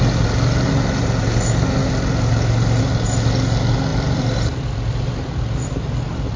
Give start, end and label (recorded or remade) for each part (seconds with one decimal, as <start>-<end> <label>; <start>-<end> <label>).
0.0-3.9 recorded; 3.9-6.0 remade; 6.0-6.4 recorded